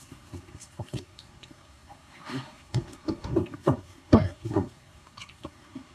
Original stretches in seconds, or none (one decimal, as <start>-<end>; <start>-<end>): none